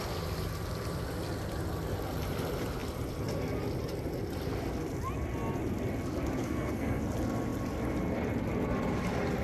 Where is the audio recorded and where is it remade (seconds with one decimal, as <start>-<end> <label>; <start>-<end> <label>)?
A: 0.0-6.4 recorded; 6.4-7.0 remade; 7.0-9.4 recorded